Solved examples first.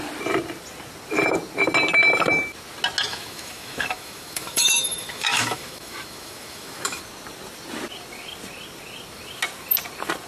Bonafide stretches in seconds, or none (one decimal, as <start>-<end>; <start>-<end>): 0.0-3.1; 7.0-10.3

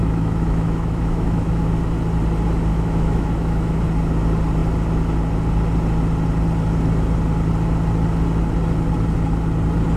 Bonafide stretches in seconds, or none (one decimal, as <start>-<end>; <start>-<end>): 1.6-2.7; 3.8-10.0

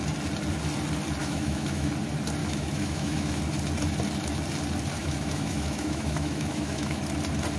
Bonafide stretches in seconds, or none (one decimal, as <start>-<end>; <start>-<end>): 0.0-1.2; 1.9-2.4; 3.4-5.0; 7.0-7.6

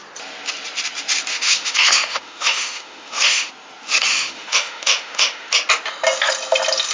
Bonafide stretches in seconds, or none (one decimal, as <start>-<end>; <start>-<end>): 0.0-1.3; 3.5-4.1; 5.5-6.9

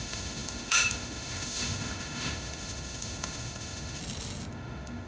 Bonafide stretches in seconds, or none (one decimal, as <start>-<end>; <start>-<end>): 4.0-4.5

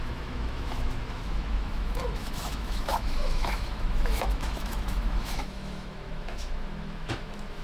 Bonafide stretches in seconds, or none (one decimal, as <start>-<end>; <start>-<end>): none